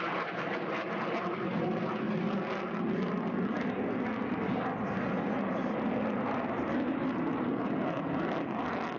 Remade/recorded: recorded